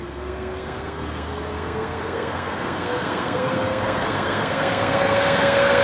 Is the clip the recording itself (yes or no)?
no